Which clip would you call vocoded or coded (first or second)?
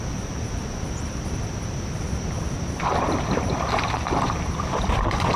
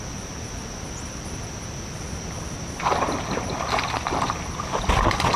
first